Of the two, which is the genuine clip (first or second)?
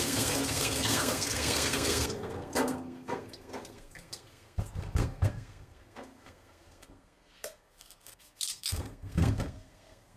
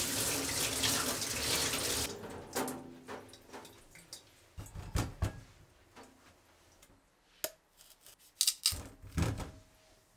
second